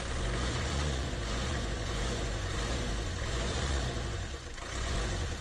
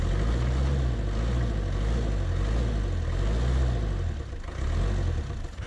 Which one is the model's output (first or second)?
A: first